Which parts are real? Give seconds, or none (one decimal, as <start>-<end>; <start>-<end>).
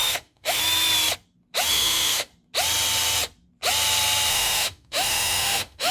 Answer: 0.6-1.7; 2.3-4.3